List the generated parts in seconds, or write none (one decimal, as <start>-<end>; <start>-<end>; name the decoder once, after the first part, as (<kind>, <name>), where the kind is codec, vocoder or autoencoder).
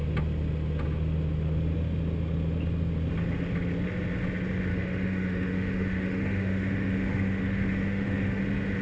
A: 4.7-8.4 (autoencoder, DAC-VAE)